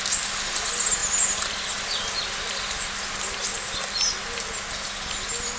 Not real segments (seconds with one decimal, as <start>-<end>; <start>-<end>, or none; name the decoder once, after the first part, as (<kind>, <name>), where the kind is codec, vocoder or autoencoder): none